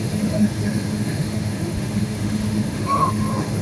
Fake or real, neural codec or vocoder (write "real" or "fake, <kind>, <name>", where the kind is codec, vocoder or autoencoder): fake, autoencoder, DAC-VAE